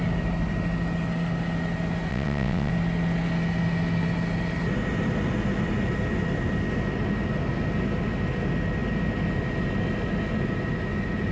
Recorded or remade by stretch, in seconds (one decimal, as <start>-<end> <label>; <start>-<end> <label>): 0.0-2.1 recorded; 2.1-2.7 remade; 2.7-11.3 recorded